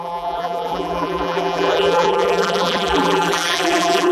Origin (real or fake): fake